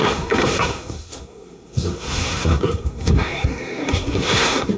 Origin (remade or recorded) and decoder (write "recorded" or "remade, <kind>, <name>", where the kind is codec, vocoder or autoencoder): remade, codec, SNAC